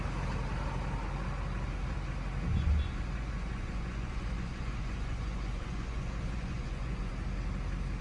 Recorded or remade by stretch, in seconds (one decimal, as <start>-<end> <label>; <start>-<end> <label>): 0.0-2.5 recorded; 2.5-7.1 remade; 7.1-8.0 recorded